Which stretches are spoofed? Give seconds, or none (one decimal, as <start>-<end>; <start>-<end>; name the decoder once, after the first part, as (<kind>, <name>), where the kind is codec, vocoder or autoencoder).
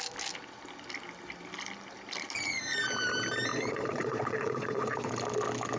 3.5-5.1 (vocoder, Vocos)